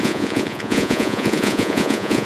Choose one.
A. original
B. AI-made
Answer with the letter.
B